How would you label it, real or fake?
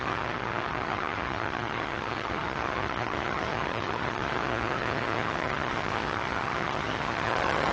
fake